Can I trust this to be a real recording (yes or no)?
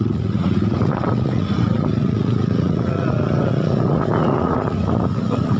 no